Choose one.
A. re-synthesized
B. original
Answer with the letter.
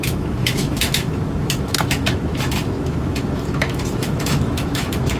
A